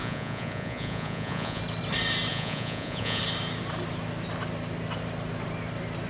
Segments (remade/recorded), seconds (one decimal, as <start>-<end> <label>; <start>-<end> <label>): 0.0-1.6 remade; 1.6-2.3 recorded; 2.3-3.2 remade; 3.2-6.1 recorded